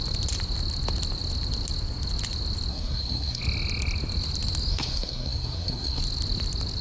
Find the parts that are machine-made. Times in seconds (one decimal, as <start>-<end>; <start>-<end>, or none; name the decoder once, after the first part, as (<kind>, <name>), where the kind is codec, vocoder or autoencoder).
2.7-3.4 (codec, SNAC); 4.7-6.0